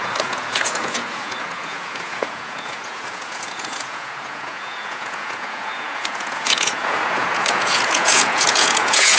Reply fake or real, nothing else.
fake